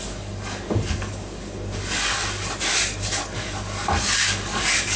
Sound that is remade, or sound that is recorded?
remade